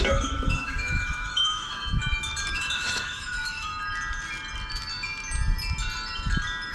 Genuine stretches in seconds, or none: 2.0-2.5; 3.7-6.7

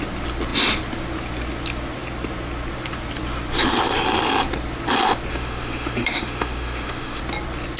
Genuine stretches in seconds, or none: 0.0-5.3; 7.2-7.8

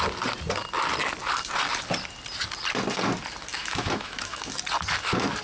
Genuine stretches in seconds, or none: 0.0-3.5; 4.5-5.4

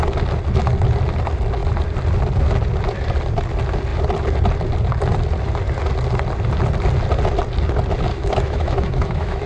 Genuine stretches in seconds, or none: 0.0-8.1

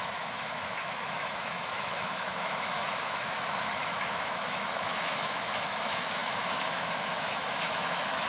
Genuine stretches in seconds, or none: none

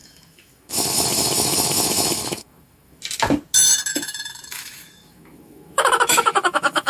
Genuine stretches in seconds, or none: 3.0-3.9

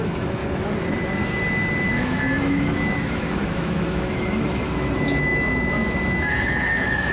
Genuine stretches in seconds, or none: 0.4-1.9